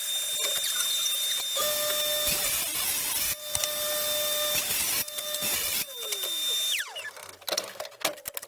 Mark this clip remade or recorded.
recorded